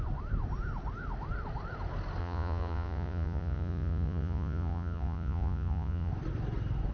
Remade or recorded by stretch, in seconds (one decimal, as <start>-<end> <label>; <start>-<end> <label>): 0.0-2.2 recorded; 2.2-6.1 remade; 6.1-6.9 recorded